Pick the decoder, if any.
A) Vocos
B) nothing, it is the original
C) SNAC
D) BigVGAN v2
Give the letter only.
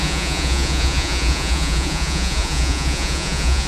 A